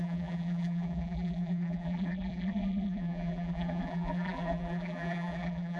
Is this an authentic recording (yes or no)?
no